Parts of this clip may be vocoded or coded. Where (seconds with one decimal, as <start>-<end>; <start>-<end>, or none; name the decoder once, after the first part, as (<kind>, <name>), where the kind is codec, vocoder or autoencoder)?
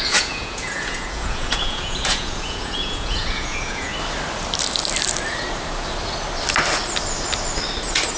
0.0-3.9 (vocoder, Vocos)